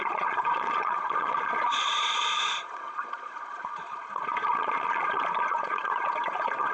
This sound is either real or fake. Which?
fake